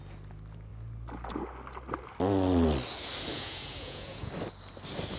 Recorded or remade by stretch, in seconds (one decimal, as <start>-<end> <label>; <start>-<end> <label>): 0.0-3.3 recorded; 3.3-4.3 remade; 4.3-5.2 recorded